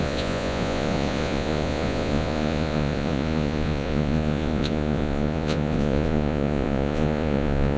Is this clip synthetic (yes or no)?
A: yes